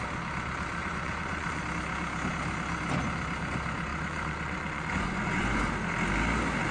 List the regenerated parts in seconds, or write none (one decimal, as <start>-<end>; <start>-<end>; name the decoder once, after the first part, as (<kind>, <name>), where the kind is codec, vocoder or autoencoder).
0.8-1.6 (vocoder, Vocos); 3.9-5.7